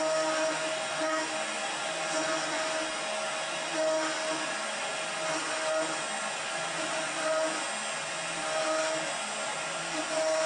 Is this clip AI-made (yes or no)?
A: no